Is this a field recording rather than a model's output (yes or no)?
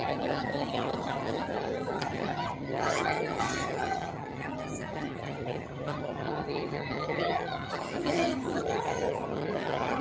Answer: no